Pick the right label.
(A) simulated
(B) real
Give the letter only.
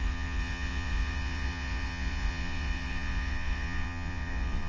A